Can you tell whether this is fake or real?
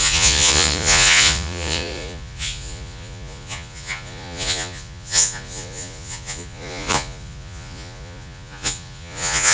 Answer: fake